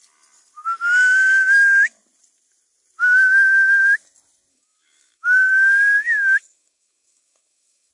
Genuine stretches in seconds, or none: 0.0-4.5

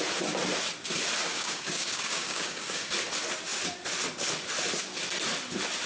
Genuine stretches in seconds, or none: 0.0-1.3; 2.9-5.9

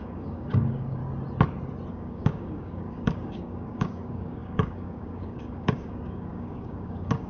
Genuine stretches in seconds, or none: 1.0-1.9

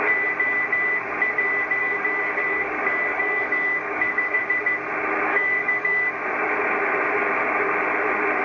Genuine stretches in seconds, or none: 0.0-1.8; 4.4-5.3; 6.1-8.4

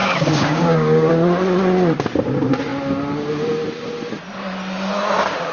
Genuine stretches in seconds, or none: 1.1-5.5

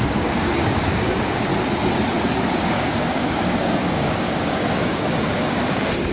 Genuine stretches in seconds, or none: 1.5-2.5

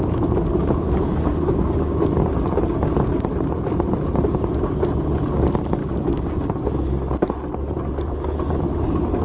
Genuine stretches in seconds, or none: 0.0-1.0; 2.0-5.8; 6.5-9.2

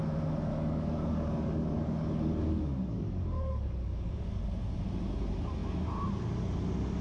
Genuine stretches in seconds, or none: 0.0-0.5; 4.4-7.0